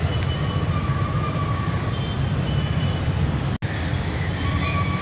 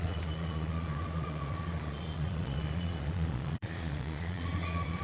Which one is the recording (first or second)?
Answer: first